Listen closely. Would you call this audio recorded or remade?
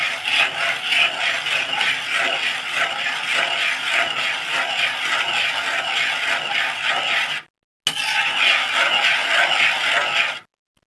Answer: recorded